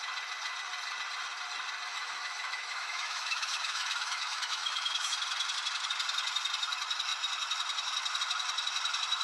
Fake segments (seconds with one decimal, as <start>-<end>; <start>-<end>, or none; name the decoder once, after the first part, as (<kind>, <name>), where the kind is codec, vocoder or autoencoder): 1.9-5.1 (autoencoder, DAC-VAE)